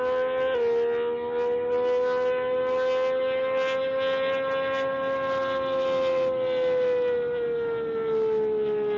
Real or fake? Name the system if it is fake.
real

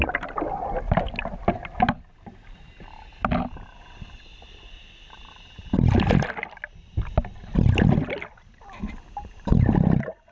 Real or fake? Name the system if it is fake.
real